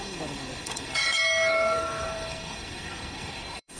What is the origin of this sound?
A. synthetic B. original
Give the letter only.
A